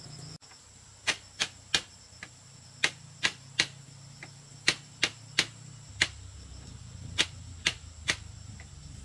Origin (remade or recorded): recorded